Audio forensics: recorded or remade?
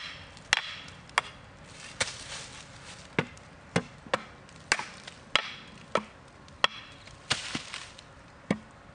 recorded